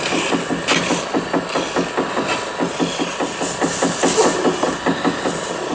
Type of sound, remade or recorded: recorded